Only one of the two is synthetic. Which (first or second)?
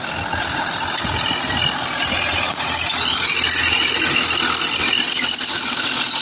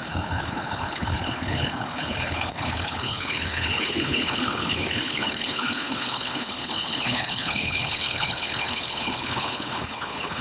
second